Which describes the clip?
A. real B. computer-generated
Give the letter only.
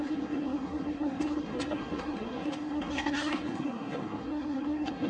B